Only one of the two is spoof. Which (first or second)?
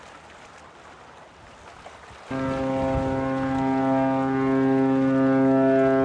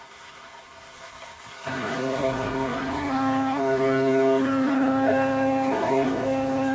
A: second